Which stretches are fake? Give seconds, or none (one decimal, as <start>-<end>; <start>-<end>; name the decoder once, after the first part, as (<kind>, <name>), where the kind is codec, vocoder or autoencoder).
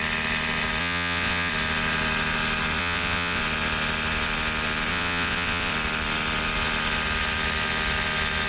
0.8-1.5 (vocoder, WaveNeXt); 2.8-3.4; 4.9-5.7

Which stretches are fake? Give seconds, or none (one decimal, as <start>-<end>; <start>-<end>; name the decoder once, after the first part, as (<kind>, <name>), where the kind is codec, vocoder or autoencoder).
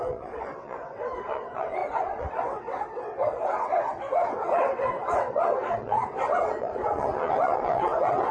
0.0-8.3 (vocoder, WaveNeXt)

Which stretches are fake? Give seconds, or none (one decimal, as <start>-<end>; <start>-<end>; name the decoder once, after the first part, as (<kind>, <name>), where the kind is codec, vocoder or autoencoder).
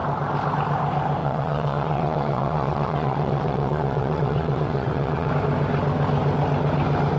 1.2-5.3 (vocoder, WaveNeXt)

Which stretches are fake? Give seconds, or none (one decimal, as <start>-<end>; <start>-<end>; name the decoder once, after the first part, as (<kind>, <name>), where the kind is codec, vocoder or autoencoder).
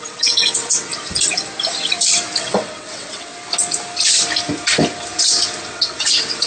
0.0-0.9 (vocoder, WaveNeXt); 2.4-3.3; 5.6-6.5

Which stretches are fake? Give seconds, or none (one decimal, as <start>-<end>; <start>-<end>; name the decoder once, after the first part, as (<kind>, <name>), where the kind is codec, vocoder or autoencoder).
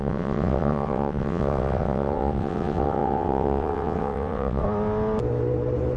0.0-4.6 (vocoder, WaveNeXt)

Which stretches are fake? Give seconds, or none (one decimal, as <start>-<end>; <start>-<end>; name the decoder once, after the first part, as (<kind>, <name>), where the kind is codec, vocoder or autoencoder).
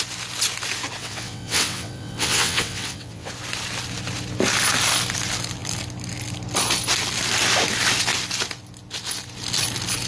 1.0-3.3 (vocoder, WaveNeXt)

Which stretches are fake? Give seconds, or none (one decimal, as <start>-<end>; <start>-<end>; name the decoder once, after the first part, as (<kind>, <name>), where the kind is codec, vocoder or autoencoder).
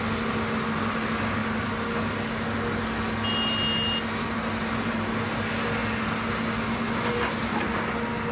none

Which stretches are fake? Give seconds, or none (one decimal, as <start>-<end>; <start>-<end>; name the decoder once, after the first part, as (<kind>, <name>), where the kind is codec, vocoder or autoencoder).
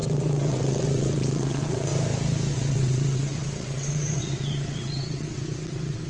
0.0-1.9 (vocoder, WaveNeXt); 2.5-6.1